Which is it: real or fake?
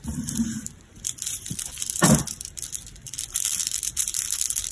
fake